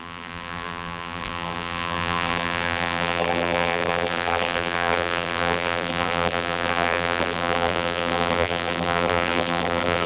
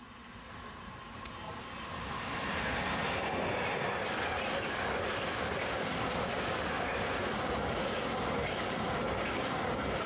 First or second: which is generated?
first